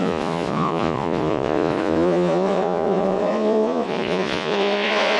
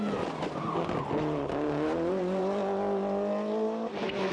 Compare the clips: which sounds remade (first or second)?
first